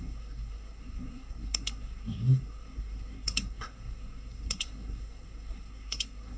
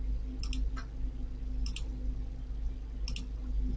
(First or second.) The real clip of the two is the second